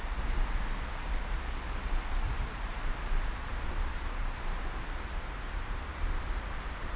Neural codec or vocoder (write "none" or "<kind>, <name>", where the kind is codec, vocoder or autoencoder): none